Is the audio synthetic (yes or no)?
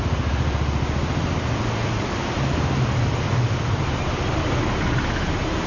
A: no